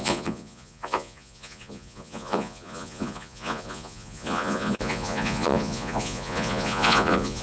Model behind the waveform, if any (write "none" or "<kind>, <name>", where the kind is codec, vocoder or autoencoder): vocoder, Vocos